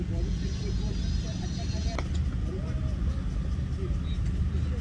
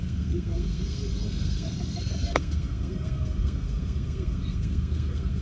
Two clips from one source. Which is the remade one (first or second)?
second